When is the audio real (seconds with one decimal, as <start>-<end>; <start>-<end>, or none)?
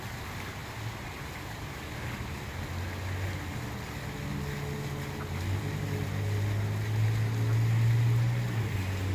0.0-0.6; 1.8-9.1